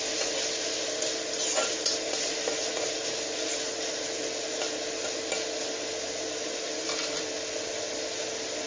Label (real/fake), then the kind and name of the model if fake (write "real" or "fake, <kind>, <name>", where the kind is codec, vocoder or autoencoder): real